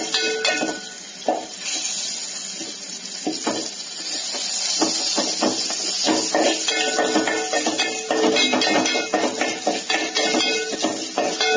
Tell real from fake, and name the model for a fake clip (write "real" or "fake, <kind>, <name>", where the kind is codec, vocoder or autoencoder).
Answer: real